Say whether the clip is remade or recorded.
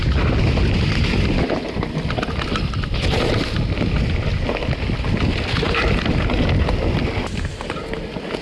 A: recorded